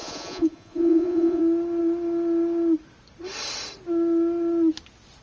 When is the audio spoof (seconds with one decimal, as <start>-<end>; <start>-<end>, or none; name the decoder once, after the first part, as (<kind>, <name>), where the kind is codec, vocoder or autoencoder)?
0.0-1.4 (vocoder, Vocos)